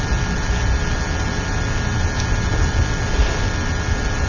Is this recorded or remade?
recorded